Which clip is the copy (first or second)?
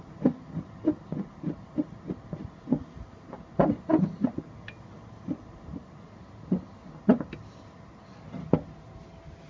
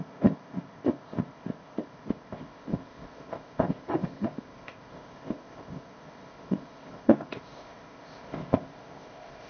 second